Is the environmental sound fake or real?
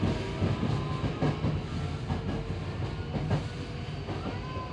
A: real